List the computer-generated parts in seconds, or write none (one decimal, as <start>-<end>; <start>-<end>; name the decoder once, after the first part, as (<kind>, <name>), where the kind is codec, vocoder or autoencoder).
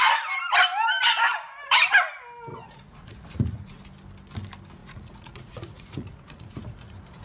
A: 2.5-3.8 (vocoder, Vocos); 4.8-7.2